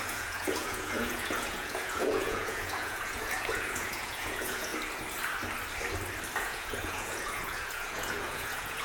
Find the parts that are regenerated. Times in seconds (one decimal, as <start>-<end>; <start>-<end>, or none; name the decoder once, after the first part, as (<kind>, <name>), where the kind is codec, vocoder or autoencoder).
0.0-4.7 (vocoder, Vocos); 6.4-8.8